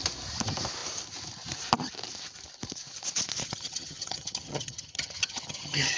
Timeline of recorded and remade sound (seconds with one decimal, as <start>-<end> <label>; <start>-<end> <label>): 0.0-3.4 recorded; 3.4-6.0 remade

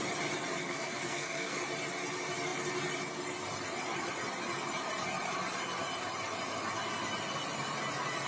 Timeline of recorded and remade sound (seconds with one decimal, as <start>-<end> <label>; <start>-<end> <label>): 0.0-0.6 recorded; 0.6-1.6 remade; 1.6-8.3 recorded

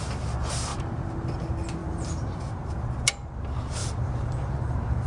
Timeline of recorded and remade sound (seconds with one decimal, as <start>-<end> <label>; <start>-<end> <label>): 0.0-1.8 recorded; 1.8-2.7 remade; 2.7-3.8 recorded; 3.8-5.1 remade

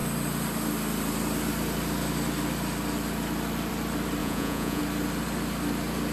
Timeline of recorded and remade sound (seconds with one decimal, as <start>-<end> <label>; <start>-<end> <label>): 0.0-4.2 recorded; 4.2-4.8 remade; 4.8-6.1 recorded

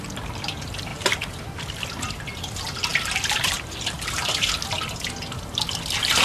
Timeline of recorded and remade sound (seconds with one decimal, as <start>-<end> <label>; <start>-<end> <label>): 0.0-0.9 recorded; 0.9-2.1 remade; 2.1-2.9 recorded; 2.9-4.7 remade; 4.7-6.2 recorded